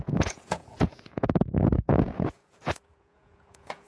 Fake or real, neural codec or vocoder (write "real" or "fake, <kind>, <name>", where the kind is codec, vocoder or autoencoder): fake, vocoder, Vocos